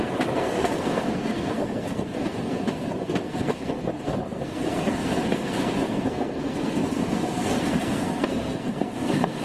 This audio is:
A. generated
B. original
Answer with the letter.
A